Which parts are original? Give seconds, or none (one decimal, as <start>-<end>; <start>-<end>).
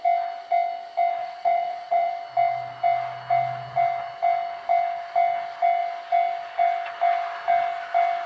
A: 0.0-1.2; 2.1-8.3